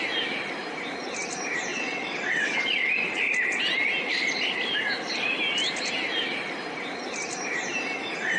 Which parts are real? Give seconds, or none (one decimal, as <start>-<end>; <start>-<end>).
0.0-1.7; 2.6-8.4